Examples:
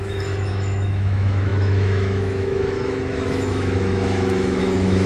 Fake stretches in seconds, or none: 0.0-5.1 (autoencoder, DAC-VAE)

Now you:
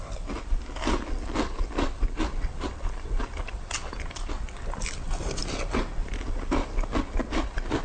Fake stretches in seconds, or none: none

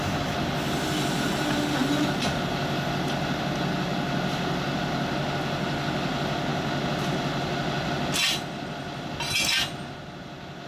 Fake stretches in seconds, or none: none

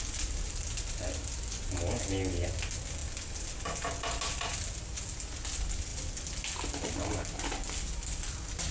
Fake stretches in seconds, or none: none

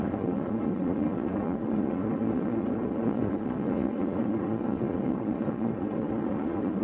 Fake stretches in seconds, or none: 0.0-6.8 (vocoder, Vocos)

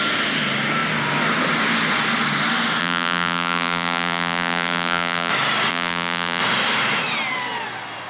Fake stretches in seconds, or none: 2.8-5.3 (vocoder, BigVGAN v2); 5.7-6.4